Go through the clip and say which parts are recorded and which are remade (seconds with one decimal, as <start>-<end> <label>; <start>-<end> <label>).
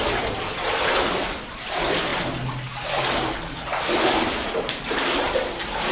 0.0-5.9 recorded